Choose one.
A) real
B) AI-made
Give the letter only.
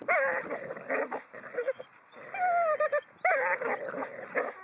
A